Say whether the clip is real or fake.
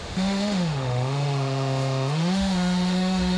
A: fake